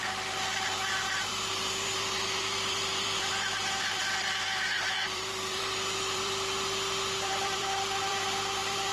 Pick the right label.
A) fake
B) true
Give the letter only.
A